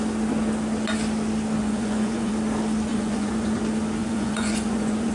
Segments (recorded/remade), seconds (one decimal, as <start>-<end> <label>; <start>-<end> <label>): 0.0-1.6 recorded; 1.6-2.3 remade; 2.3-2.9 recorded; 2.9-3.6 remade; 3.6-4.0 recorded; 4.0-5.1 remade